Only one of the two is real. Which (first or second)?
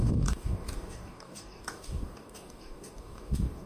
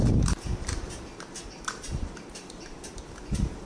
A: second